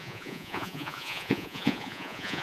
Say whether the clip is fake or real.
fake